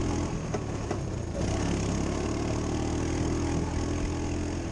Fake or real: real